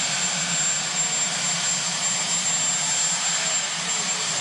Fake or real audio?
real